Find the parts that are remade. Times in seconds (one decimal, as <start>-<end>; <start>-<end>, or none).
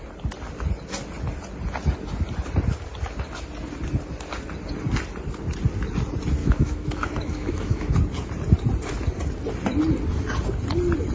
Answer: 6.4-7.9